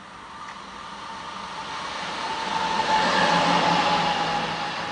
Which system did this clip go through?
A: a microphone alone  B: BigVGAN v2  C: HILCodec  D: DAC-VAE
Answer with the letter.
A